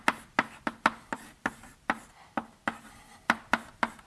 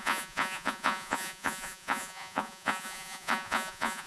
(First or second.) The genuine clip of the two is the first